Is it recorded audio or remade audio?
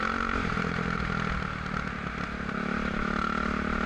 recorded